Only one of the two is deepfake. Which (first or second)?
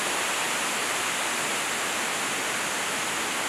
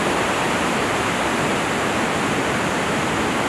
second